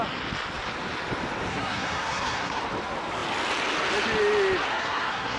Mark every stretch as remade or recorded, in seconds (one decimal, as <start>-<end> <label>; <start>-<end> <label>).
0.0-1.5 recorded; 1.5-2.6 remade; 2.6-4.7 recorded; 4.7-5.4 remade